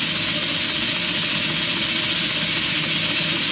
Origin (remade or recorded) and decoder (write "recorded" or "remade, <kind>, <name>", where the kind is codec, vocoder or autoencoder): recorded